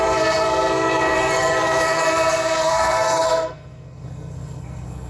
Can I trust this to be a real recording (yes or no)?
no